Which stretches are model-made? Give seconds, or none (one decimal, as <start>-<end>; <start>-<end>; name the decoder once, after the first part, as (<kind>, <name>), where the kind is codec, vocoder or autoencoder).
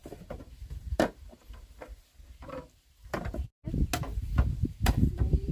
0.0-3.3 (vocoder, BigVGAN v2); 4.1-5.5